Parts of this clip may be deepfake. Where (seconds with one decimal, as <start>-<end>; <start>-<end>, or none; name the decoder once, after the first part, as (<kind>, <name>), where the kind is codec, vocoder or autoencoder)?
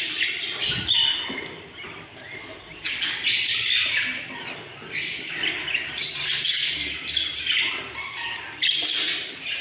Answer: none